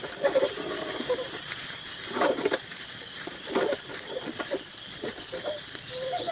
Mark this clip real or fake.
fake